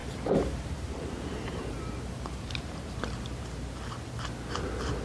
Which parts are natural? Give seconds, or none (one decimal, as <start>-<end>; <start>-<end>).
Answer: 3.0-5.0